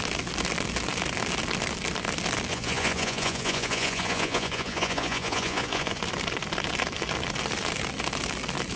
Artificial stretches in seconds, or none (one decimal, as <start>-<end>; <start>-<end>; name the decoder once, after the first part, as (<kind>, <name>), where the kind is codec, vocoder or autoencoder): 2.5-6.0 (vocoder, Vocos)